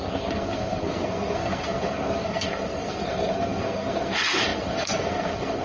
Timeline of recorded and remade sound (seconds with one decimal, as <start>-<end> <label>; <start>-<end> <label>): 0.0-5.6 remade

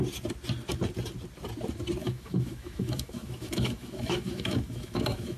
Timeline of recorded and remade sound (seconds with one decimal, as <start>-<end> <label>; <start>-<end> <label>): 0.0-2.0 recorded; 2.0-5.4 remade